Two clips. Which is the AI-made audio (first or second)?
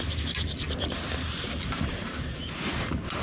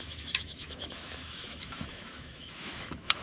second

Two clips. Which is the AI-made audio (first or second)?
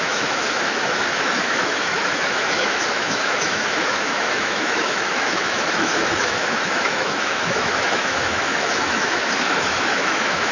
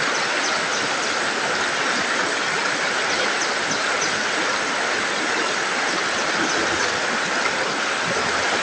first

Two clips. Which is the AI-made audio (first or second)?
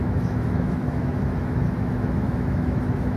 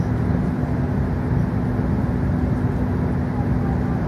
first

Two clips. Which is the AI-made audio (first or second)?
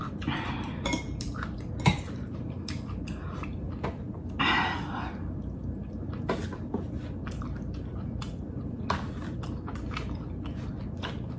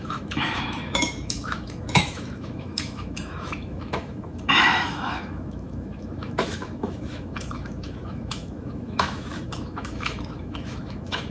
second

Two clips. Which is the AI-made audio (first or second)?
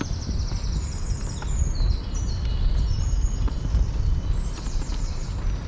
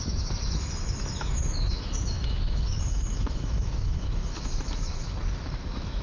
second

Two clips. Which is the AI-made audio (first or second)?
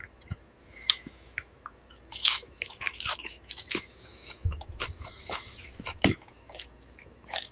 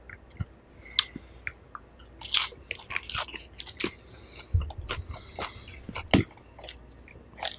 first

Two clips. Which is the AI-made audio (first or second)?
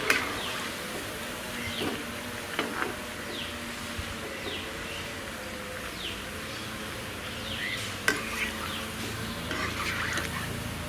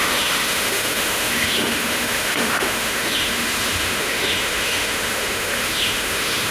second